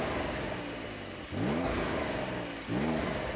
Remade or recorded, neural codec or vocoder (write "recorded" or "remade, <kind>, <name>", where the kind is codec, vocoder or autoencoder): recorded